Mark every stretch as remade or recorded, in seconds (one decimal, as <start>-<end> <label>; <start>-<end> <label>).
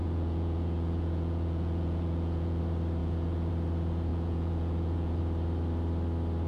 0.0-2.6 remade; 2.6-3.0 recorded; 3.0-3.5 remade; 3.5-4.1 recorded; 4.1-5.2 remade; 5.2-6.5 recorded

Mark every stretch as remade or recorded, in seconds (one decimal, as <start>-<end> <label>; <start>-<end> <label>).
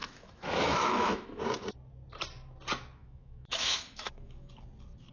0.0-1.4 remade; 1.4-3.0 recorded; 3.0-4.5 remade; 4.5-5.1 recorded